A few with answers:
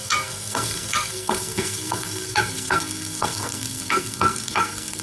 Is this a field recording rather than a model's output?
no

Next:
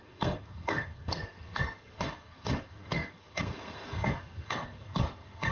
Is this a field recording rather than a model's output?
no